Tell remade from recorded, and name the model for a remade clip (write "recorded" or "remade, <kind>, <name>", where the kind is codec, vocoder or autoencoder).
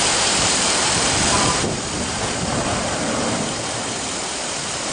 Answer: remade, vocoder, BigVGAN v2